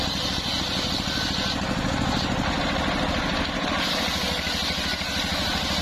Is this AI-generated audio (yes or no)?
no